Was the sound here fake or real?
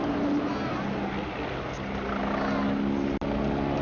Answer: real